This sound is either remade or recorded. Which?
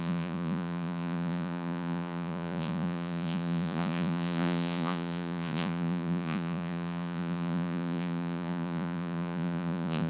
remade